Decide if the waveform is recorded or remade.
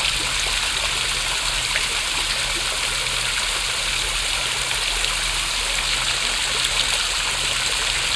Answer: recorded